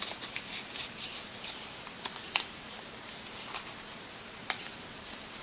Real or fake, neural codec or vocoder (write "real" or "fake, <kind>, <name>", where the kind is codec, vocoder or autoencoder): fake, vocoder, BigVGAN v2